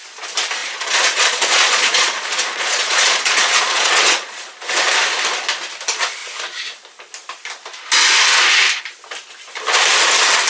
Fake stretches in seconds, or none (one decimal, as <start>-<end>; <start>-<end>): 0.6-4.5